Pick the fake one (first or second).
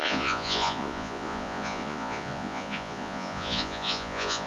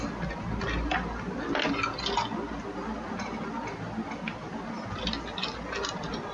first